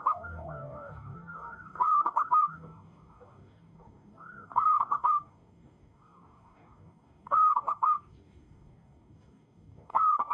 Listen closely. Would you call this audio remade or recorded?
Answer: remade